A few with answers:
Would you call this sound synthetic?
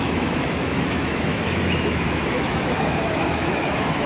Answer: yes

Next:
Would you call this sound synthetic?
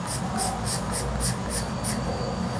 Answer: no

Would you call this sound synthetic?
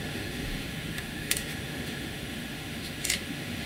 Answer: yes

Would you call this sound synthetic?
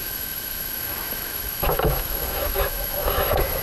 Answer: yes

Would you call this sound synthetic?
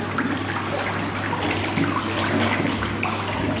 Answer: no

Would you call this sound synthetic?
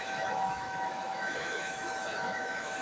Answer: yes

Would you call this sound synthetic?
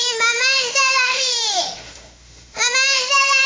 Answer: yes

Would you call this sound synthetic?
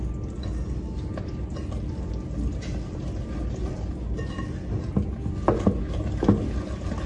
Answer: no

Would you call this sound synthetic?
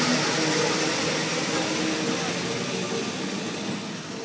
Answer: no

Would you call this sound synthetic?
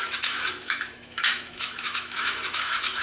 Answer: yes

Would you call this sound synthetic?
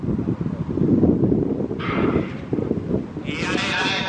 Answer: no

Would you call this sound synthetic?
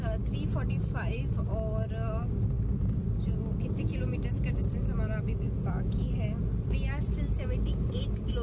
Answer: no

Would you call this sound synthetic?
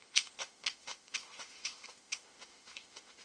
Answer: yes